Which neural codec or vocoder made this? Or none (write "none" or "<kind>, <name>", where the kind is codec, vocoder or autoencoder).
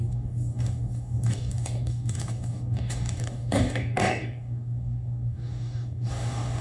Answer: codec, DAC